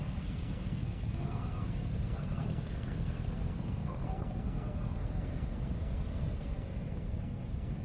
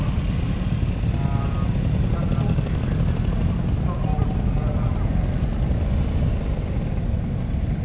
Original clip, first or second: second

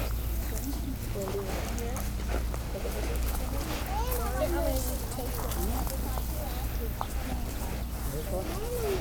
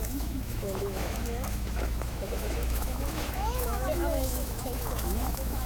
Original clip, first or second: first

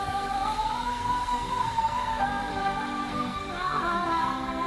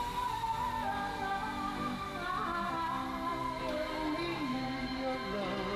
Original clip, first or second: second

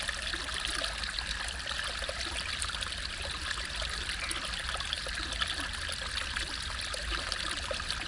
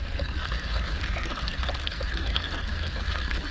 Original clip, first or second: first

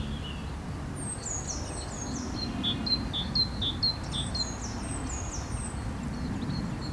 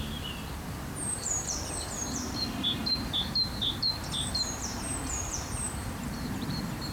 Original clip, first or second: first